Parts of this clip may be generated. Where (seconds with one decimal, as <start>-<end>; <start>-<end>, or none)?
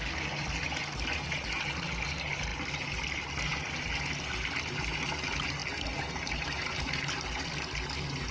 none